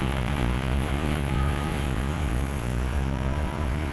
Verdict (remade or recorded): remade